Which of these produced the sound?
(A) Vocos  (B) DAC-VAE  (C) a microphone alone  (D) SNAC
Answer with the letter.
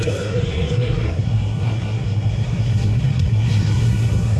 D